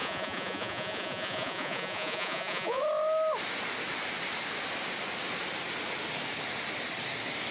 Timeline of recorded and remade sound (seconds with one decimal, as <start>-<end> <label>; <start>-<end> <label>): 0.0-2.8 remade; 2.8-7.5 recorded